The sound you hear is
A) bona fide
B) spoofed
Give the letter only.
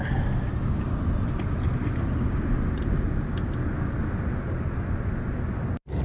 A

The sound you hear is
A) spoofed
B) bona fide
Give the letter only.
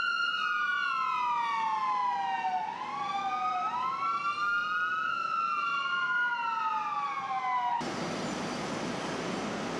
B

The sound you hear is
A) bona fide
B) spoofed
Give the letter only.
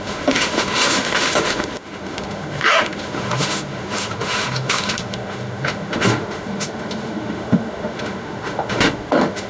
B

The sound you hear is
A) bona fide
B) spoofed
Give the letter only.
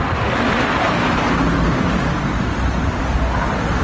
A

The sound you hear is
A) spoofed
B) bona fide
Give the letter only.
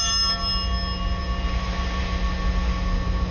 B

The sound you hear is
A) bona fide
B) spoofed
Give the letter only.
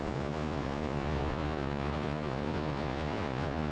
B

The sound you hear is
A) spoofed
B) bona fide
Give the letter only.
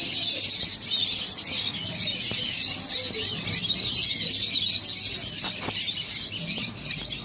B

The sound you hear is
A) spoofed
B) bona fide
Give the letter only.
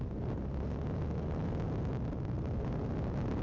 B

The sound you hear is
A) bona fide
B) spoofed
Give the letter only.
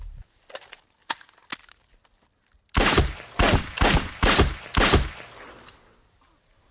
A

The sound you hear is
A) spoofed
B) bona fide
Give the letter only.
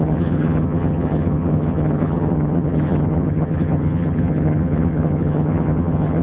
A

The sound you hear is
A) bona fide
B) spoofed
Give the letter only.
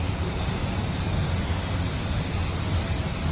A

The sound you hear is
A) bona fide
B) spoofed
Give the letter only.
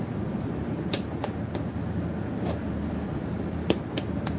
A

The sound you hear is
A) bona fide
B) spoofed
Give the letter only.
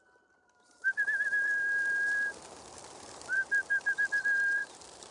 B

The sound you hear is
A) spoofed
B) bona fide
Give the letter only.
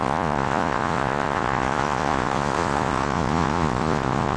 A